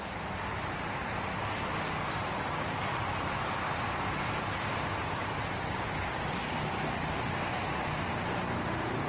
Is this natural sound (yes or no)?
yes